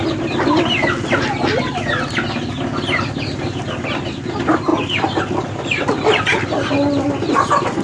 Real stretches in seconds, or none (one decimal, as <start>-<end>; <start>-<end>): 0.0-7.8